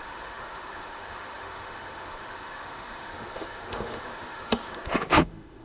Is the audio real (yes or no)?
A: no